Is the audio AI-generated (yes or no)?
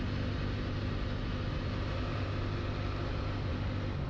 no